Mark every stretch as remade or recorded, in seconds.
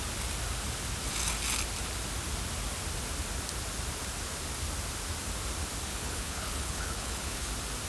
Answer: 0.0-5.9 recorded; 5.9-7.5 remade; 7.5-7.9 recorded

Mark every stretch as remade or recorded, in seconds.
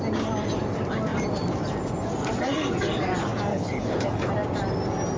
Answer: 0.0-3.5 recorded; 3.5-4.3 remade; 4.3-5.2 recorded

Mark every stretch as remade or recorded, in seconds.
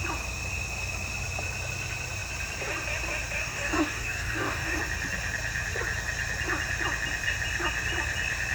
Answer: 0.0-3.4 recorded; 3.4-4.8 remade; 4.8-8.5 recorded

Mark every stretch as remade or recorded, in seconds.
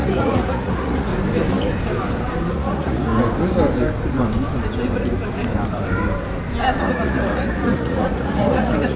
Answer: 0.0-1.1 remade; 1.1-2.5 recorded; 2.5-3.1 remade; 3.1-6.8 recorded; 6.8-9.0 remade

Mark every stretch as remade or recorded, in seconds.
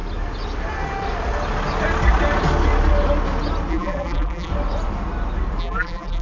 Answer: 0.0-3.7 recorded; 3.7-4.5 remade; 4.5-5.6 recorded; 5.6-6.2 remade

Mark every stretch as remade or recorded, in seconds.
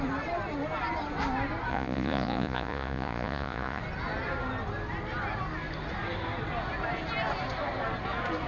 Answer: 0.0-1.7 recorded; 1.7-3.8 remade; 3.8-8.5 recorded